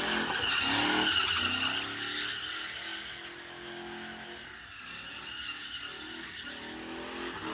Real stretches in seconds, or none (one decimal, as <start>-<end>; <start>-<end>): 0.0-7.5